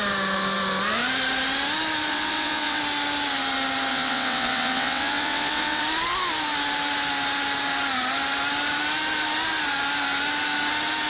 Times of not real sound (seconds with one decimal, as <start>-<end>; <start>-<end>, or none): 2.1-2.8; 3.9-5.8